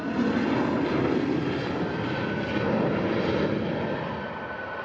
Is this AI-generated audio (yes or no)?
no